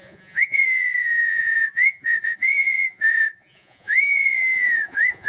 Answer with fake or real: fake